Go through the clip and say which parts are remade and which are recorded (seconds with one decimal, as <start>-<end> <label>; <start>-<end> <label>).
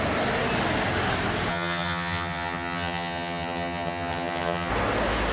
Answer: 0.0-1.5 recorded; 1.5-4.7 remade; 4.7-5.3 recorded